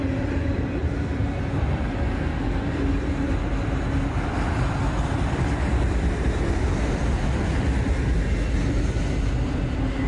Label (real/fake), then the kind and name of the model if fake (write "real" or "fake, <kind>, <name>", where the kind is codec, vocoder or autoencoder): real